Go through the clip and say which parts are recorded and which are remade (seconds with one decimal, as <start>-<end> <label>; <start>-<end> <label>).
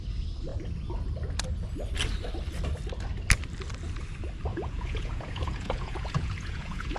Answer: 0.0-4.5 recorded; 4.5-7.0 remade